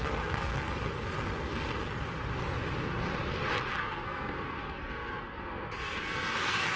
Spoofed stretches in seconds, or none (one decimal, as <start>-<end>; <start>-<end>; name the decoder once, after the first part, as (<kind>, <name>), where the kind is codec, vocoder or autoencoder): 0.0-0.5 (codec, SNAC); 3.8-6.8